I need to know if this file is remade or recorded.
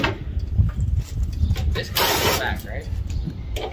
recorded